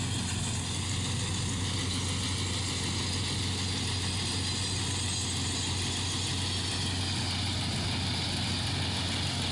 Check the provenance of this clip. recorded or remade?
recorded